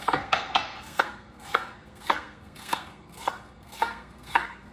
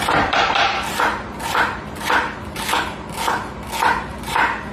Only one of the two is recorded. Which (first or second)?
second